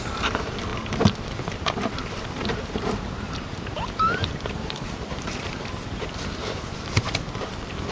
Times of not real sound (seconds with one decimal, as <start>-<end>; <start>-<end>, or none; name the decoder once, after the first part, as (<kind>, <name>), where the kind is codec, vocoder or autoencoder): 2.4-7.1 (vocoder, BigVGAN v2)